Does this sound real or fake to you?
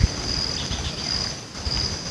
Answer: real